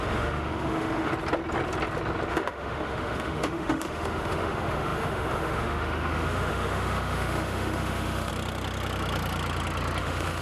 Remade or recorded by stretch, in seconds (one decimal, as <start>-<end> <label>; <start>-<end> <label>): 0.0-1.1 remade; 1.1-2.3 recorded; 2.3-8.3 remade; 8.3-10.0 recorded; 10.0-10.4 remade